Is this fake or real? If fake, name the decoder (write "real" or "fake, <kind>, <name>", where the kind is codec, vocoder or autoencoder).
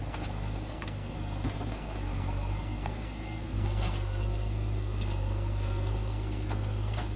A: fake, codec, SNAC